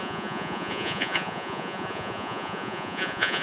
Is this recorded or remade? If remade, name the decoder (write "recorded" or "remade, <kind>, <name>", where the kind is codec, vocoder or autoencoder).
remade, vocoder, Vocos